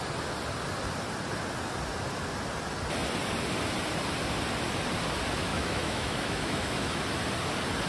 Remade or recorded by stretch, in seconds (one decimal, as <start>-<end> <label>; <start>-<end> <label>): 0.0-5.5 recorded; 5.5-7.0 remade; 7.0-7.9 recorded